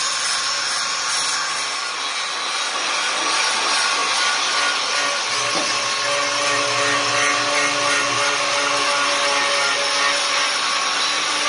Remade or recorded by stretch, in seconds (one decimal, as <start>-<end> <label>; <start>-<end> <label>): 0.0-11.5 recorded